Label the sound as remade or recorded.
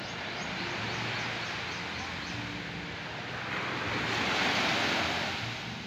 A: recorded